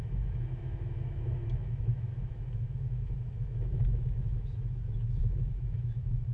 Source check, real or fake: fake